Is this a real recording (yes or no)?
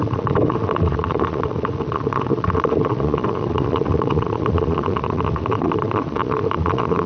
no